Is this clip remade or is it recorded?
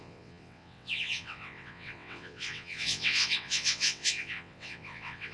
remade